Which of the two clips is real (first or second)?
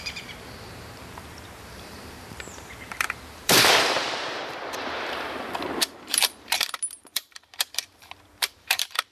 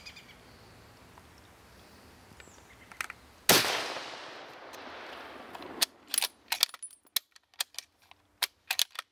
second